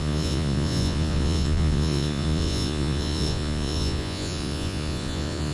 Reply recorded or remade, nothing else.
remade